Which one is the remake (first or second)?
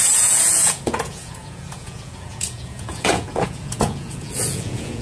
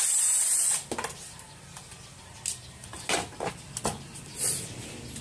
first